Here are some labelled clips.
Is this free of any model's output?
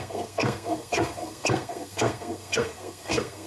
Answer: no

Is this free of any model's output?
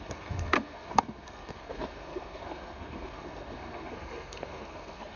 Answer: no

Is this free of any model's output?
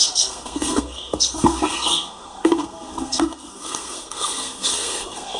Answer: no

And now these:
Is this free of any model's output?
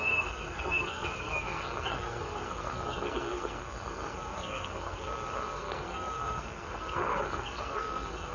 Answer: no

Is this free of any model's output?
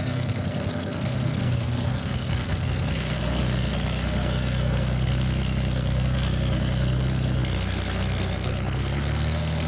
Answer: no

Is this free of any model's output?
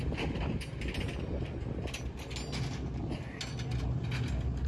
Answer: yes